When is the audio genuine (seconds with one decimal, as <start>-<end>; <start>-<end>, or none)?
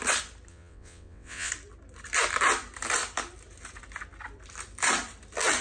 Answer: 0.0-0.5; 1.5-5.6